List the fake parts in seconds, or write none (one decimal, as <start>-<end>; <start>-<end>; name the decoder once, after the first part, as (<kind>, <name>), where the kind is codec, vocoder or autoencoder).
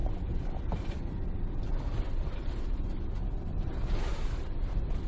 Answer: 0.9-5.1 (vocoder, BigVGAN v2)